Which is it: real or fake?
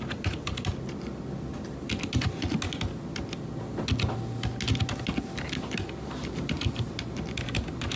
real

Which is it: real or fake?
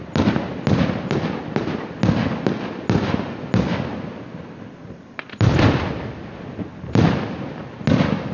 real